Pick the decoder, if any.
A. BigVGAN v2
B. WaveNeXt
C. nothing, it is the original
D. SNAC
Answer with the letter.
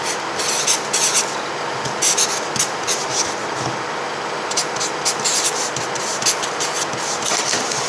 C